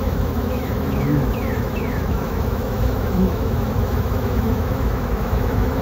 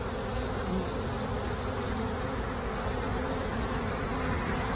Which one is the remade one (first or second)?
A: first